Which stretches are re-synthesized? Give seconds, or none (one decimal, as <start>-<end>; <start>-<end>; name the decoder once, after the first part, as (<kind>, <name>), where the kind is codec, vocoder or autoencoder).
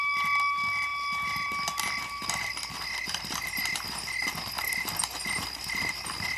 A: none